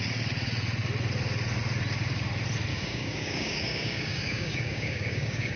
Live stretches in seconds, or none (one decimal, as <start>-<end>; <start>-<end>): 0.0-2.7